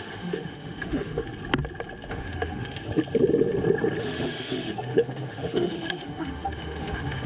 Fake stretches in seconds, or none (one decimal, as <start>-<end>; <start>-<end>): 0.0-1.2; 2.1-2.9; 4.0-7.3